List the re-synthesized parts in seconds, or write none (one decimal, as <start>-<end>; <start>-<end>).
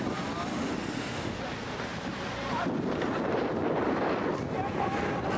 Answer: 0.5-1.4